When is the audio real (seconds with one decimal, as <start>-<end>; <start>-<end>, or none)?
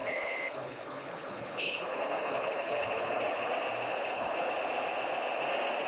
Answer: 3.5-3.9; 4.5-5.9